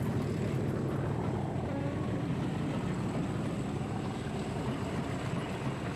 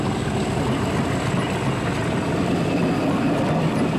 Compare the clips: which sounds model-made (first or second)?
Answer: first